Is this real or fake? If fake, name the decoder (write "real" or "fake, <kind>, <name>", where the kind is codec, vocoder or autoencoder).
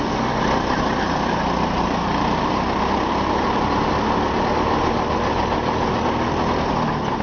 real